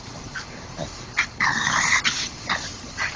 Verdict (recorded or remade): remade